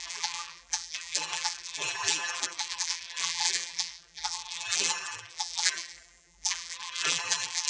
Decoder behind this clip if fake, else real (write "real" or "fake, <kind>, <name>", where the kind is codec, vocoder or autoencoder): fake, vocoder, BigVGAN v2